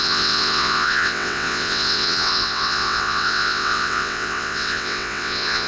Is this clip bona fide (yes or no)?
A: no